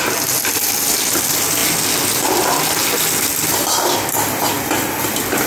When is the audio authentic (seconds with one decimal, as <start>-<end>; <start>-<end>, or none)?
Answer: 0.0-5.5